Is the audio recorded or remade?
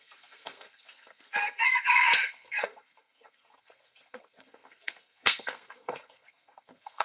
remade